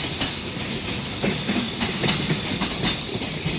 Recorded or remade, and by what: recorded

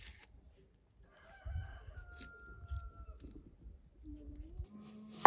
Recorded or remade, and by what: recorded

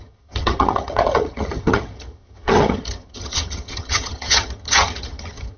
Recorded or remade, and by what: remade, vocoder, HiFi-GAN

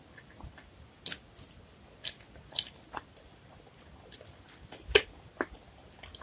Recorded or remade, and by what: recorded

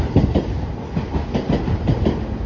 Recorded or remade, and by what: recorded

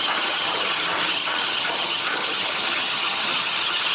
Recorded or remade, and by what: remade, vocoder, HiFi-GAN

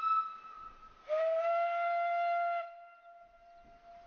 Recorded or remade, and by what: recorded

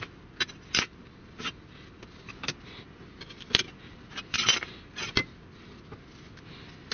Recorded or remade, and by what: recorded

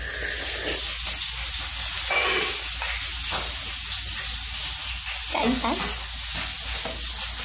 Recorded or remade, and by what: recorded